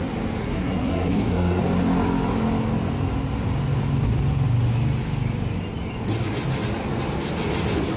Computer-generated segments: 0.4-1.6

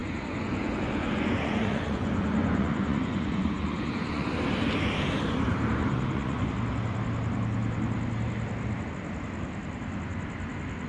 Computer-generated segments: 0.0-4.3; 5.8-6.5

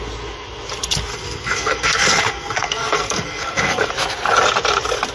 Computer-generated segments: 1.1-3.9

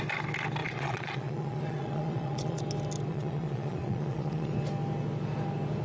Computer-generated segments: 0.6-2.6; 3.1-4.5